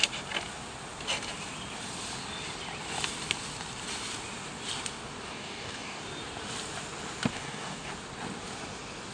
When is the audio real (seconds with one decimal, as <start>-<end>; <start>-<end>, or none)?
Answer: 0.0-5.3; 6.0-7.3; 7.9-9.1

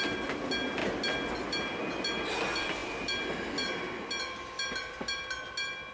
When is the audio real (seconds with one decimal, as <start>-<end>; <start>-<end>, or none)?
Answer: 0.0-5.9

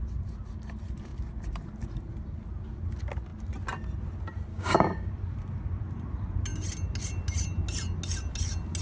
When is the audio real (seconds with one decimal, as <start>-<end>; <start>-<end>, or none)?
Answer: 0.0-4.5; 5.1-8.8

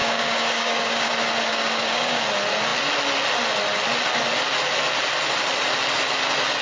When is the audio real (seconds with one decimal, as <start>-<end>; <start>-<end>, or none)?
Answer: 1.1-1.5; 2.2-6.6